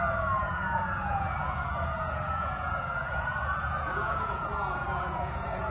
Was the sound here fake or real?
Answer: fake